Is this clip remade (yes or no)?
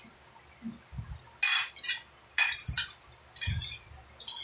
no